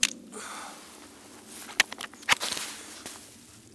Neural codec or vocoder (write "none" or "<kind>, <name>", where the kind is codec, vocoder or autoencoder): none